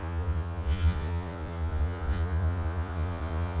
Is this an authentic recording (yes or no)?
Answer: no